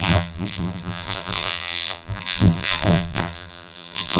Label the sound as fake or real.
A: fake